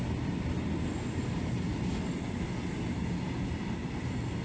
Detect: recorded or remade recorded